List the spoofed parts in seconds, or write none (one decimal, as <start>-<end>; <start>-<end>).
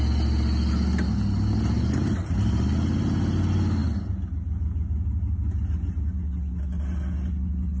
none